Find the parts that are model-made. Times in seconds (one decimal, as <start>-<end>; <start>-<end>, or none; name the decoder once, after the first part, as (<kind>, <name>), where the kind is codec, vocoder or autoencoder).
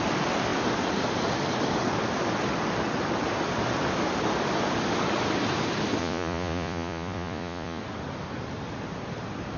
6.0-7.8 (vocoder, Vocos)